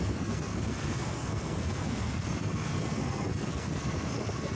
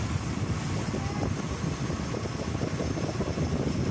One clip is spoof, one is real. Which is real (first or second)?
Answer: second